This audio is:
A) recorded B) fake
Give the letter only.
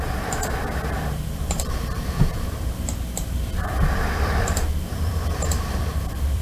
B